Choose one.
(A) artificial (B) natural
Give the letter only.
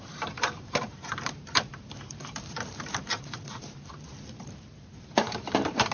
A